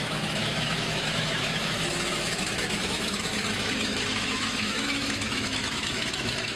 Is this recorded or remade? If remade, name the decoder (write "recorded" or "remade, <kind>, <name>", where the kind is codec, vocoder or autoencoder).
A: remade, autoencoder, DAC-VAE